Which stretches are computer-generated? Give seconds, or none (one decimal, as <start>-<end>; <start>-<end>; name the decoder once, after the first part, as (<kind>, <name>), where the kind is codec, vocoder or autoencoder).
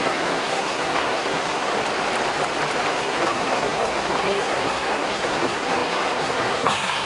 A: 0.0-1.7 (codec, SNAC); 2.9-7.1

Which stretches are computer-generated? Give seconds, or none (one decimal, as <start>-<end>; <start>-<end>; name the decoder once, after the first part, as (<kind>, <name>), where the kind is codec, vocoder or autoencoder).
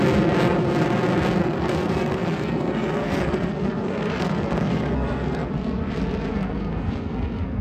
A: 1.4-5.5 (codec, SNAC); 6.3-7.6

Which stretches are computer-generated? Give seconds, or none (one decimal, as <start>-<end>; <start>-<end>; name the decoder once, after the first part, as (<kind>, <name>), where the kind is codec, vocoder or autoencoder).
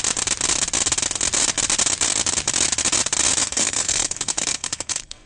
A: 3.4-5.3 (codec, SNAC)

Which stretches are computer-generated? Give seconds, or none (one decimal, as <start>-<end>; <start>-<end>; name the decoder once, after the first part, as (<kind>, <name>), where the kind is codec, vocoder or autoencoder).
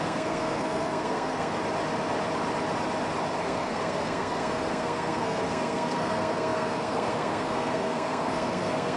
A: 0.0-1.6 (codec, SNAC); 3.4-9.0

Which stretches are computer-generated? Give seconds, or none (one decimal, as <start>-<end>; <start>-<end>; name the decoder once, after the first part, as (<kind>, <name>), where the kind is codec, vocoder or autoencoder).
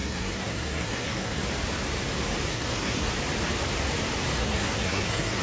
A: 0.0-1.4 (codec, SNAC); 2.5-3.1; 4.4-5.4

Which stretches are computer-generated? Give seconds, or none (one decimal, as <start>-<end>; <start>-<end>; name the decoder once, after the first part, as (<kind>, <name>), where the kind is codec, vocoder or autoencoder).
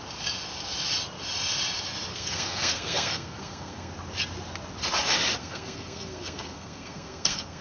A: 2.1-3.9 (codec, SNAC); 5.4-7.6